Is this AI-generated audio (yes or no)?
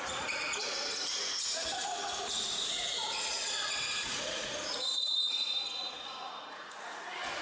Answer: yes